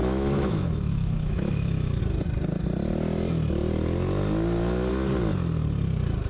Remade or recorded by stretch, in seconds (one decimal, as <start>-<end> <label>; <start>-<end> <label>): 0.0-2.0 remade; 2.0-6.3 recorded